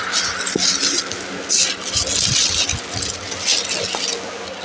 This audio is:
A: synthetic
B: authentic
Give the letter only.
B